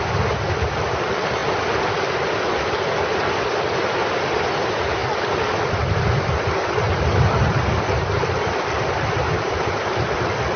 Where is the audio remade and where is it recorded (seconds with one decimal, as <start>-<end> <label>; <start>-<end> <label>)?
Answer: 0.0-1.4 remade; 1.4-1.9 recorded; 1.9-10.6 remade